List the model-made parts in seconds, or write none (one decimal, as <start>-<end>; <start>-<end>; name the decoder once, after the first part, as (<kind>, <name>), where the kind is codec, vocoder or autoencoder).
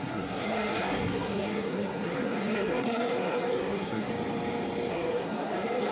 0.0-4.1 (codec, SNAC); 4.9-5.9